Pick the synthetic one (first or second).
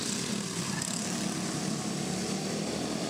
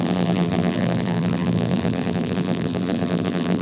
second